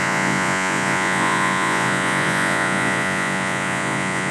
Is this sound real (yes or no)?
no